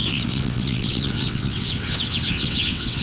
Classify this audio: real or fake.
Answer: fake